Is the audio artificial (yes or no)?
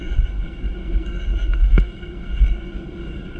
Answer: yes